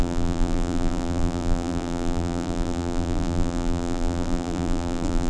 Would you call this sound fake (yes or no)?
yes